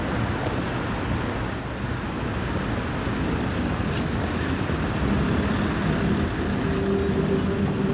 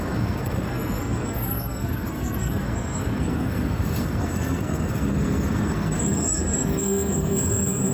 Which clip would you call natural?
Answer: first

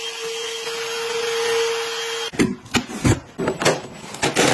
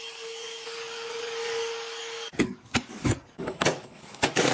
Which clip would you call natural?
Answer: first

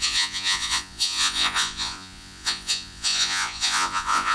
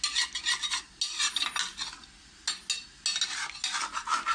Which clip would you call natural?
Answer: second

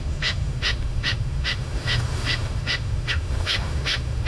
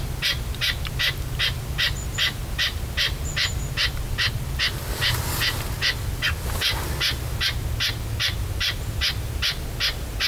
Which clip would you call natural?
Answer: second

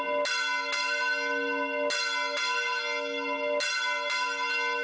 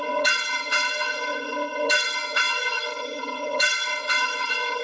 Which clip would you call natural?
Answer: first